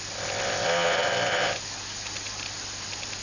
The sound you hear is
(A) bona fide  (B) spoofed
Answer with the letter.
A